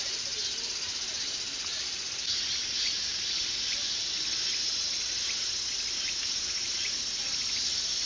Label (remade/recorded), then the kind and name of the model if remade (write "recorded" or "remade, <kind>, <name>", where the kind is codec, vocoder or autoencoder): remade, vocoder, BigVGAN v2